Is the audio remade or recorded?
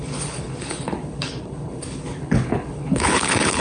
remade